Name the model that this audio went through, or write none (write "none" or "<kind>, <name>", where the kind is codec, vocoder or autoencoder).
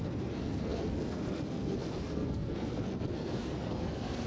codec, SNAC